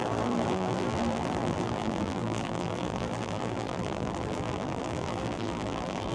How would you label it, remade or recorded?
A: remade